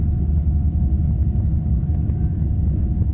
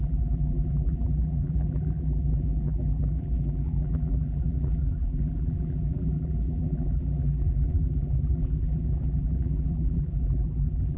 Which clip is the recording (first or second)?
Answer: first